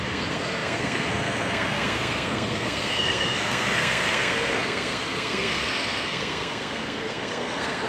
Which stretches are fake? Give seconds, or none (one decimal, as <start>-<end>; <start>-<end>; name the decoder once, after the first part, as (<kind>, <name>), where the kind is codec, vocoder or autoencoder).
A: 0.0-7.9 (codec, SNAC)